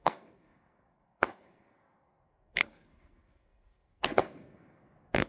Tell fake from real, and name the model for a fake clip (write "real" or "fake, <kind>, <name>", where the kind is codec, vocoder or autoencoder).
fake, codec, SNAC